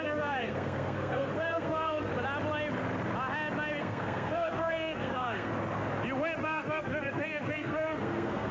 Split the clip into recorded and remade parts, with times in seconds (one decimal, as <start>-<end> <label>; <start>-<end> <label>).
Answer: 0.0-2.1 remade; 2.1-3.8 recorded; 3.8-5.5 remade; 5.5-6.4 recorded; 6.4-8.5 remade

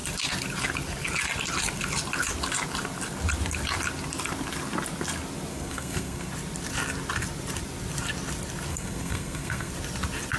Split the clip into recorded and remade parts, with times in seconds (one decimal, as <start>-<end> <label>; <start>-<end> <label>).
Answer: 0.0-5.5 recorded; 5.5-6.3 remade; 6.3-8.7 recorded; 8.7-9.7 remade; 9.7-10.4 recorded

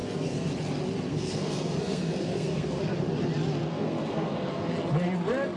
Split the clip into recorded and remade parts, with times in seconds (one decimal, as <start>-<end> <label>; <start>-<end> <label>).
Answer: 0.0-0.5 remade; 0.5-1.1 recorded; 1.1-2.8 remade; 2.8-3.6 recorded; 3.6-4.7 remade; 4.7-5.6 recorded

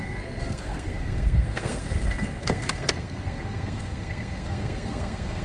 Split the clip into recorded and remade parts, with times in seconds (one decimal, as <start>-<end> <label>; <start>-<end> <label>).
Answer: 0.0-5.4 remade

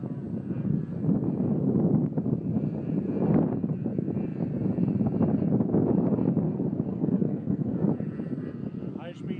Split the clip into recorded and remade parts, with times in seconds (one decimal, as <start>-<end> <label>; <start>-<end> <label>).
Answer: 0.0-6.9 recorded; 6.9-7.9 remade; 7.9-9.4 recorded

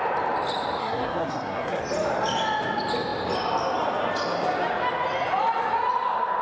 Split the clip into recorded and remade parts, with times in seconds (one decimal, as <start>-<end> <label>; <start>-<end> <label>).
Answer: 0.0-0.8 recorded; 0.8-1.8 remade; 1.8-6.4 recorded

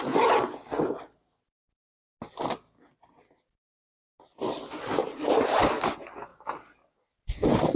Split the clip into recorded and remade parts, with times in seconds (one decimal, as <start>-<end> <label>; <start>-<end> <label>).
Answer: 0.0-7.8 recorded